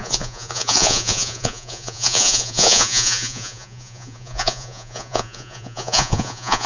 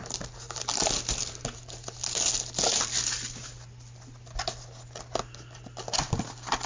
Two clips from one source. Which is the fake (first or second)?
first